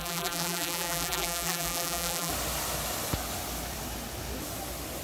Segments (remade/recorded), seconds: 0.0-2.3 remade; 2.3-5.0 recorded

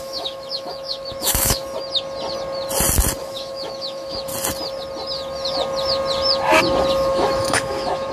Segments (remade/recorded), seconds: 0.0-1.6 remade; 1.6-3.2 recorded; 3.2-4.3 remade; 4.3-6.9 recorded; 6.9-8.1 remade

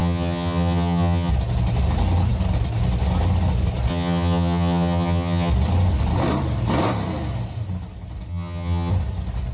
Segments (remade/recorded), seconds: 0.0-1.3 remade; 1.3-3.9 recorded; 3.9-5.5 remade; 5.5-8.3 recorded; 8.3-8.9 remade; 8.9-9.5 recorded

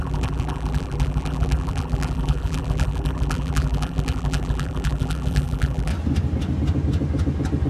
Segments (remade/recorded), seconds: 0.0-5.9 remade; 5.9-7.7 recorded

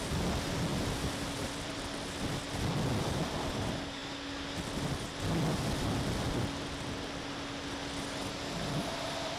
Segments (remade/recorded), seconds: 0.0-0.7 recorded; 0.7-1.7 remade; 1.7-9.4 recorded

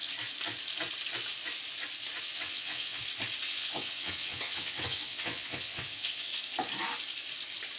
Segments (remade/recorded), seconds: 0.0-2.2 recorded; 2.2-3.0 remade; 3.0-3.5 recorded; 3.5-6.3 remade; 6.3-7.8 recorded